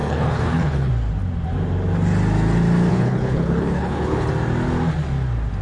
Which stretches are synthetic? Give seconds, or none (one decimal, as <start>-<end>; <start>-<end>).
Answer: 0.0-0.9; 2.9-4.3